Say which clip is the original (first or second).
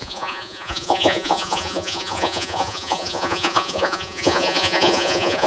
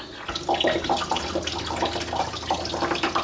second